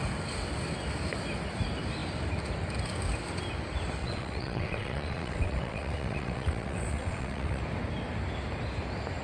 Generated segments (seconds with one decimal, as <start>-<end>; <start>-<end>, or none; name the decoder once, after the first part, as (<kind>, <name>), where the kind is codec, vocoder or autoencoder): 4.0-7.6 (vocoder, WaveNeXt)